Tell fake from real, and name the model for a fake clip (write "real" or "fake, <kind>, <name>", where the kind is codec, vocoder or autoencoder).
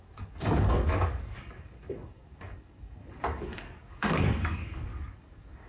fake, codec, DAC